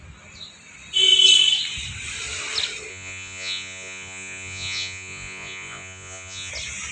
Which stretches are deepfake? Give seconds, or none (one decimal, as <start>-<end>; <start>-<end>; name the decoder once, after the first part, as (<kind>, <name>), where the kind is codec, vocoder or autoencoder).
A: 2.9-6.5 (vocoder, Vocos)